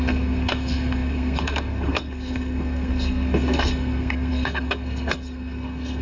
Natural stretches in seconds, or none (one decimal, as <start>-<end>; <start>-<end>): none